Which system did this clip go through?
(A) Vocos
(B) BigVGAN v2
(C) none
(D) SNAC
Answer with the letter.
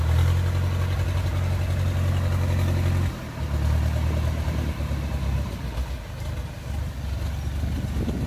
C